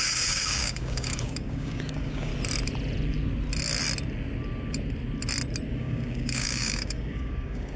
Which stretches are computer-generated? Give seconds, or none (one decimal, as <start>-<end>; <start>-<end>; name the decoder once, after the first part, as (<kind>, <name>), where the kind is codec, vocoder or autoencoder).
0.0-2.3 (codec, DAC); 5.8-7.8